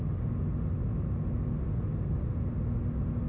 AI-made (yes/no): no